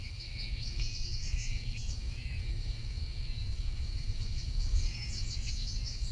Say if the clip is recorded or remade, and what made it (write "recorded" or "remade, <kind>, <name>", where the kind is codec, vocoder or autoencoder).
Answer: remade, codec, SNAC